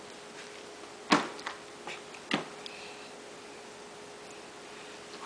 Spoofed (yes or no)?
no